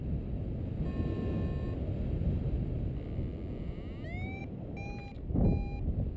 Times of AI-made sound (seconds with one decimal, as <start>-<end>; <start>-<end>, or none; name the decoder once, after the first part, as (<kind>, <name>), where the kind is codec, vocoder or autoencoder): none